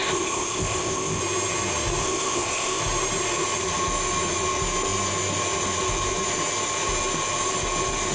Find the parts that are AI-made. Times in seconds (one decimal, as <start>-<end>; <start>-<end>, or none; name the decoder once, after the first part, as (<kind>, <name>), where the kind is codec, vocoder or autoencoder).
0.0-1.2 (codec, ZipCodec); 2.0-2.8